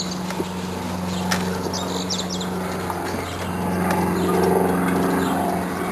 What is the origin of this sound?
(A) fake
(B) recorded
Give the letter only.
B